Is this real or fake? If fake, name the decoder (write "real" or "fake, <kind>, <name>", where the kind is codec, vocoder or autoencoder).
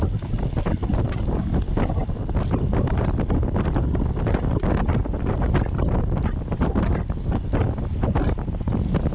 real